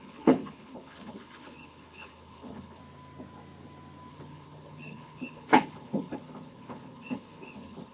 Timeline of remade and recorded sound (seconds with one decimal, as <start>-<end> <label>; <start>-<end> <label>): 0.0-2.8 remade; 2.8-4.1 recorded; 4.1-7.9 remade